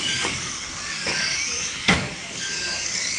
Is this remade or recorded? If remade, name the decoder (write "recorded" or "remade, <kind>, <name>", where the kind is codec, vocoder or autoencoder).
remade, codec, DAC